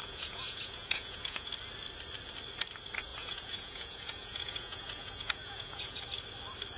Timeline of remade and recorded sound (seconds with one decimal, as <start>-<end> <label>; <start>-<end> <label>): 0.0-1.5 remade; 1.5-3.1 recorded; 3.1-6.0 remade; 6.0-6.8 recorded